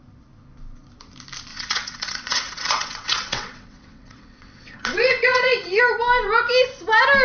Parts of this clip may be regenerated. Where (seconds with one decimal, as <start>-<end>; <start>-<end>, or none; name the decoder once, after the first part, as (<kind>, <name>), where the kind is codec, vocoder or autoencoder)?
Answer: 1.5-5.8 (vocoder, WaveNeXt)